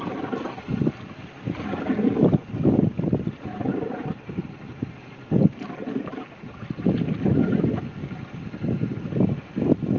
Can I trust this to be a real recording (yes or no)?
yes